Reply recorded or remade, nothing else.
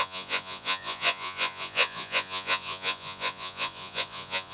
remade